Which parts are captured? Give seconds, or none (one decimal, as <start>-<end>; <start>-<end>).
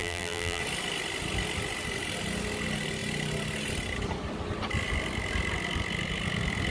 0.6-6.7